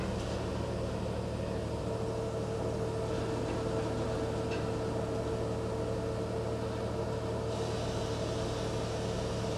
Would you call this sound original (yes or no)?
yes